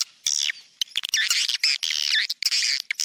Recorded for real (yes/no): yes